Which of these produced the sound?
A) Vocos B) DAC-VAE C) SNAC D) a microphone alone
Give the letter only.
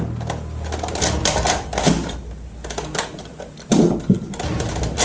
D